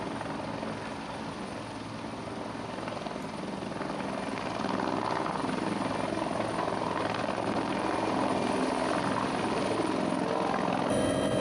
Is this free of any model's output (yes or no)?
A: yes